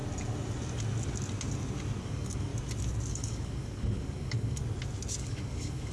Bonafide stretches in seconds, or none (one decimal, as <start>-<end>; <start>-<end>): 0.0-2.0; 2.5-3.1; 4.6-5.2